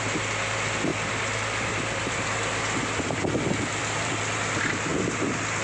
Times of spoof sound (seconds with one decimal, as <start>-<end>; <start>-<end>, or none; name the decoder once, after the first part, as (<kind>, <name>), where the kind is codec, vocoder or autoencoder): 0.0-0.9 (vocoder, BigVGAN v2); 3.0-4.9